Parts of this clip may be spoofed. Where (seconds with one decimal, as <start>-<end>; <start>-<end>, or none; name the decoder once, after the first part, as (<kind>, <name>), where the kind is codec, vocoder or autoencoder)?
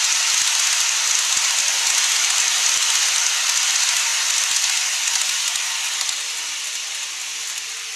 none